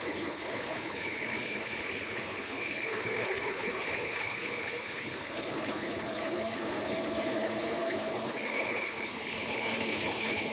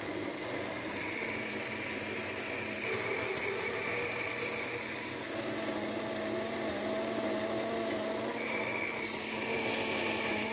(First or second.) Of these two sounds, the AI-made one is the first